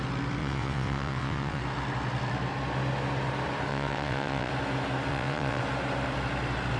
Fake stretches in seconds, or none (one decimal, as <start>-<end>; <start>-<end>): 0.4-1.6; 3.7-4.5; 5.1-5.6